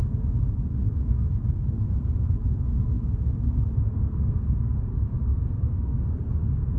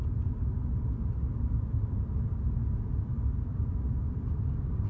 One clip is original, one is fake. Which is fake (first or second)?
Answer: first